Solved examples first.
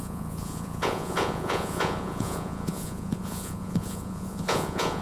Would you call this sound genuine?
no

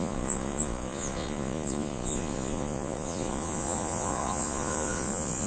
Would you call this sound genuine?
no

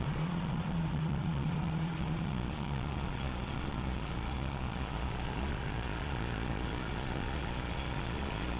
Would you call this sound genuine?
no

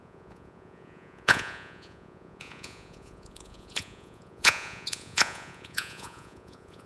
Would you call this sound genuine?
no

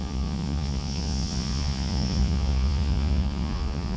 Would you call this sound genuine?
no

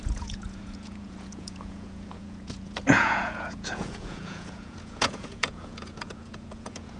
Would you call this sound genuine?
no